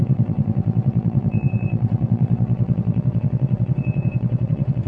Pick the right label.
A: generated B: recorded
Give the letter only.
A